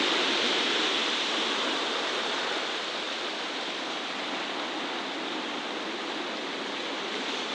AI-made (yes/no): no